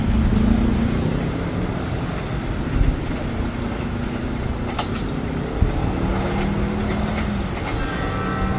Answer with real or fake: real